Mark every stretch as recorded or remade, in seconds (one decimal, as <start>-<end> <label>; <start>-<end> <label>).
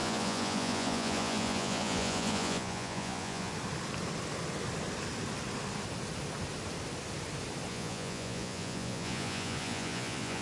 0.0-3.5 remade; 3.5-7.7 recorded; 7.7-10.4 remade